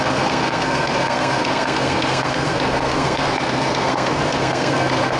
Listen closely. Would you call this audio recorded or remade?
remade